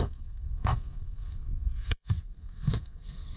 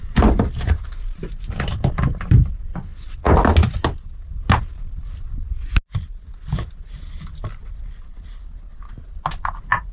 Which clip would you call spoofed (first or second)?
first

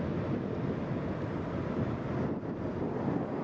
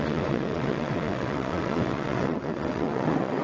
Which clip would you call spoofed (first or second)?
second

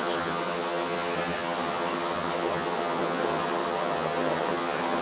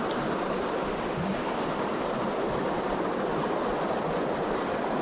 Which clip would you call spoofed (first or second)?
first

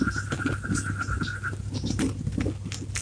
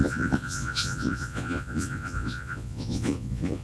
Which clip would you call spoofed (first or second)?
second